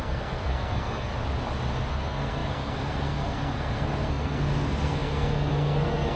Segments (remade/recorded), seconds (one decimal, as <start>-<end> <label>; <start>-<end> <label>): 0.0-1.1 remade; 1.1-1.9 recorded; 1.9-6.2 remade